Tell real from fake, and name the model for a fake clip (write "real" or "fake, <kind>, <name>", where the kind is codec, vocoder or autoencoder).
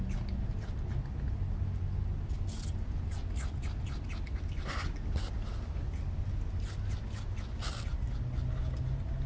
real